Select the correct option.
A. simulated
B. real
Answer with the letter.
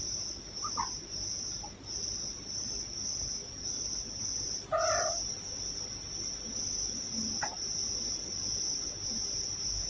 B